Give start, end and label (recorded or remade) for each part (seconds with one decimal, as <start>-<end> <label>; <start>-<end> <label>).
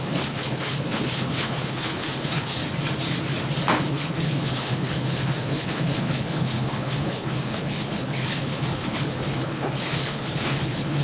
0.0-2.6 remade; 2.6-3.8 recorded; 3.8-11.0 remade